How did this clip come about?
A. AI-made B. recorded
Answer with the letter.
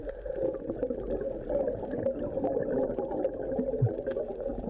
B